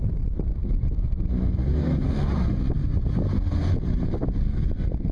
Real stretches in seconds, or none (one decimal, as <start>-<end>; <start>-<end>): 0.0-0.6; 2.1-5.1